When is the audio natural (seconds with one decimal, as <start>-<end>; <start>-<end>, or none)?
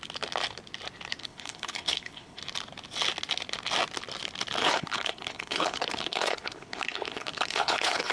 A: 0.0-1.2; 2.4-4.6